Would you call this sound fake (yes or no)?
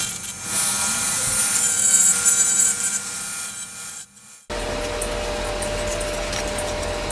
no